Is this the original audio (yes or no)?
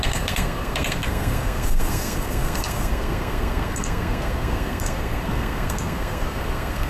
no